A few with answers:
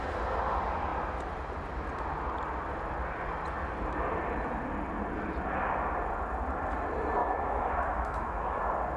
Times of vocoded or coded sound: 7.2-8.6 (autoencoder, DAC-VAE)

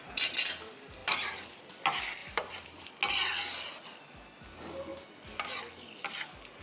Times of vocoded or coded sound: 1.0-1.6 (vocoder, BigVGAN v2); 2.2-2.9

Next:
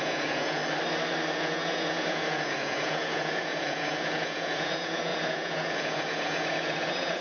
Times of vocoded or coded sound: 0.0-0.6 (vocoder, Vocos); 1.3-7.2

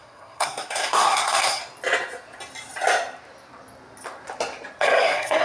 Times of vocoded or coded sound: 0.0-1.6 (codec, SNAC); 4.8-5.4

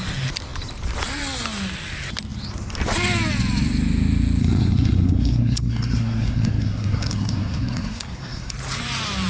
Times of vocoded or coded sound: 4.4-8.5 (codec, SNAC)

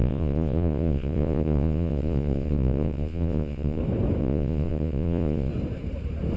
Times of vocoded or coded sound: 0.0-3.8 (vocoder, Vocos); 4.2-5.5